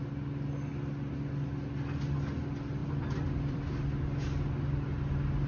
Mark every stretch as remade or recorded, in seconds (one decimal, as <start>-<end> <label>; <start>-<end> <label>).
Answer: 0.0-2.8 recorded; 2.8-3.7 remade; 3.7-5.5 recorded